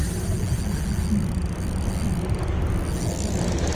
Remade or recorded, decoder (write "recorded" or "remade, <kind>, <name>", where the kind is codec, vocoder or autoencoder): recorded